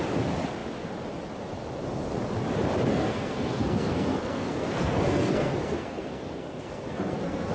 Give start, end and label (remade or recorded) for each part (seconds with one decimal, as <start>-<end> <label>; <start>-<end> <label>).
0.0-2.9 recorded; 2.9-7.5 remade